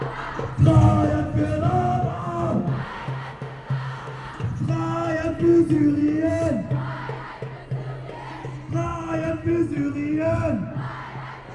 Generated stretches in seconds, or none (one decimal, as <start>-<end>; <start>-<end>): 2.1-4.3